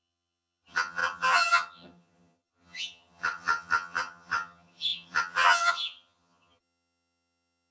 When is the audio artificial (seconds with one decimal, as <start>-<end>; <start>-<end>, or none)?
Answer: 0.0-7.7